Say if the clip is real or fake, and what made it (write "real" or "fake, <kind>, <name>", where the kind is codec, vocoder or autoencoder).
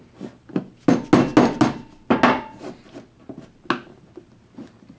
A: real